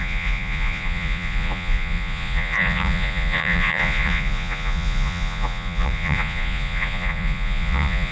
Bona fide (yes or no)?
no